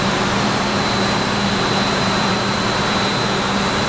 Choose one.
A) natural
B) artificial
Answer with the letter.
B